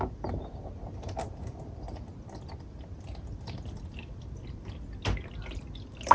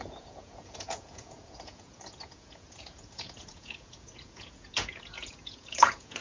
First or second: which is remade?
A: second